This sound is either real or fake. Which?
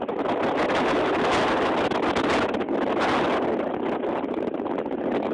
real